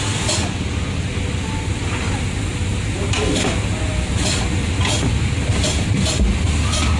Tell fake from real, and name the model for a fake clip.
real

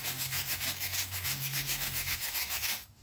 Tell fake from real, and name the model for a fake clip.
fake, codec, DAC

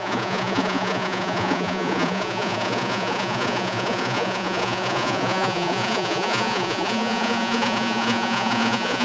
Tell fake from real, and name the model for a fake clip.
fake, vocoder, Vocos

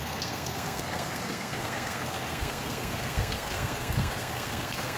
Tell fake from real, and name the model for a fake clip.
fake, codec, SNAC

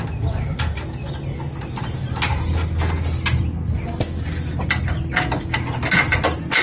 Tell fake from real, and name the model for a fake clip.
real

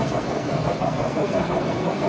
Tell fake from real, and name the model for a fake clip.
fake, codec, SNAC